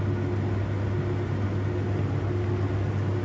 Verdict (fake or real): real